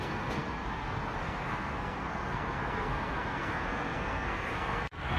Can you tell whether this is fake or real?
fake